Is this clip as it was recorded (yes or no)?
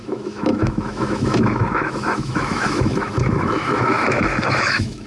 no